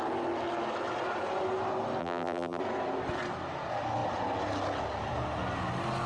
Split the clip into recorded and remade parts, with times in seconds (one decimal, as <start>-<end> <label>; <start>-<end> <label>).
0.0-2.0 recorded; 2.0-2.6 remade; 2.6-6.1 recorded